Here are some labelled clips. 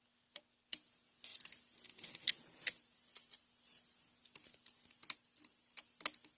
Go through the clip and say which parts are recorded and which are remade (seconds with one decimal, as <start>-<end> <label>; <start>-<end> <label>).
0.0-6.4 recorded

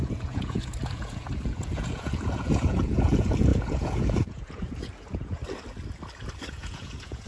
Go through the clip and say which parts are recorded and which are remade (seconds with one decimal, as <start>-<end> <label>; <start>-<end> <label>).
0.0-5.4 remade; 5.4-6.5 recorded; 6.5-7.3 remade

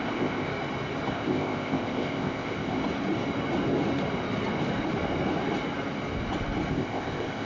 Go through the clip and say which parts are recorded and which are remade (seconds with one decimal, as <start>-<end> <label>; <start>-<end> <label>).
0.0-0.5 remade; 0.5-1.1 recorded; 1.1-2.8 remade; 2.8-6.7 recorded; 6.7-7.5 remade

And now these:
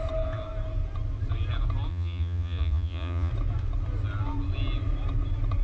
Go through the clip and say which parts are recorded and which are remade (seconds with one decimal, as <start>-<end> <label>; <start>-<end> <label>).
0.0-1.9 recorded; 1.9-3.3 remade; 3.3-5.6 recorded

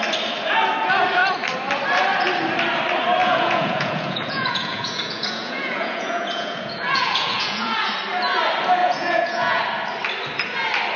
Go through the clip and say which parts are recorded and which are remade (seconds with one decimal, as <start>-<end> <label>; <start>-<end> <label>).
0.0-3.2 recorded; 3.2-7.9 remade; 7.9-8.8 recorded; 8.8-9.6 remade; 9.6-11.0 recorded